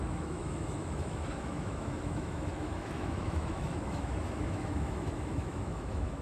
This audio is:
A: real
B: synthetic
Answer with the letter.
B